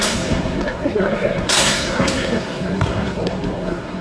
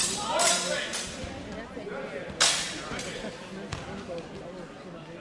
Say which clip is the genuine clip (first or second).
second